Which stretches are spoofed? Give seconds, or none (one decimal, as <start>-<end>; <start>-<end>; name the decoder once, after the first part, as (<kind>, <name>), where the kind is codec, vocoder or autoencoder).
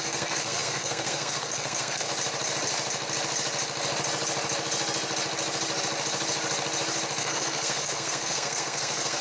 0.0-2.1 (codec, SNAC); 7.2-9.2